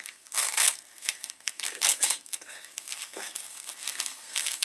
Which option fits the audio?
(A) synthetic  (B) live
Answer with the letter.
A